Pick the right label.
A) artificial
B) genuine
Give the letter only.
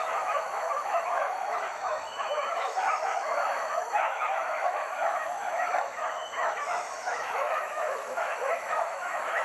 A